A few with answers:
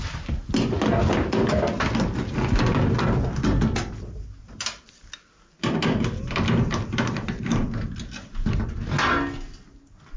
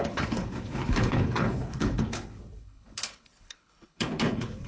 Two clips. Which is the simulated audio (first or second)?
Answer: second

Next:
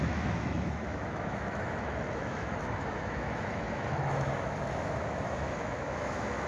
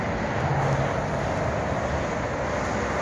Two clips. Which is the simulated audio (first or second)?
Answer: first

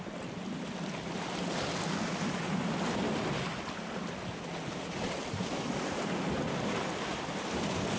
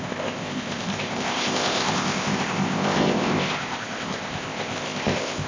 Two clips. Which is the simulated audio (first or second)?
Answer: second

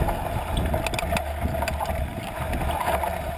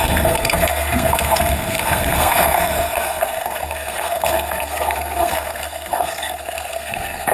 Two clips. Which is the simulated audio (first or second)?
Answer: second